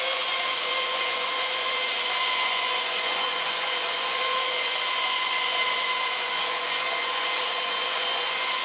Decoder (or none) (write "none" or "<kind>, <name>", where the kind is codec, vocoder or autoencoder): vocoder, Vocos